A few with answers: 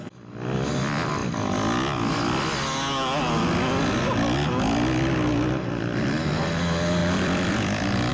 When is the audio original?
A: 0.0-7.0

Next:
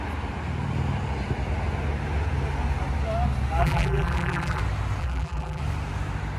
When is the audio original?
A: 0.0-3.6; 4.6-5.0; 5.6-6.4

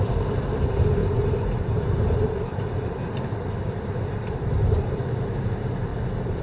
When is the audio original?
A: 0.0-1.0; 4.8-5.9

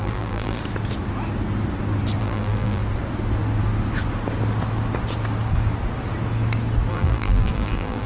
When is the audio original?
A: 0.6-2.2; 2.8-6.9

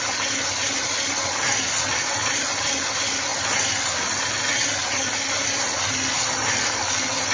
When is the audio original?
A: 0.0-2.2; 2.7-4.8; 5.6-7.3